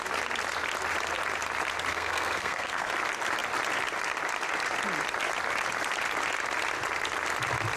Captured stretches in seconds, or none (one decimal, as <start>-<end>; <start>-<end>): 0.0-1.9; 2.9-7.8